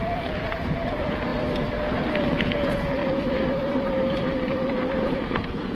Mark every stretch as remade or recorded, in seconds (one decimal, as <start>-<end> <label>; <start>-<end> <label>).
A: 0.0-1.3 remade; 1.3-2.1 recorded; 2.1-3.0 remade; 3.0-5.0 recorded; 5.0-5.7 remade